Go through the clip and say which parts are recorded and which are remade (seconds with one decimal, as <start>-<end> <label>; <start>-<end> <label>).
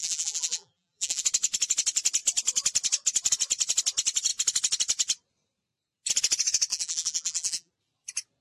0.0-1.2 remade; 1.2-6.7 recorded; 6.7-7.7 remade; 7.7-8.4 recorded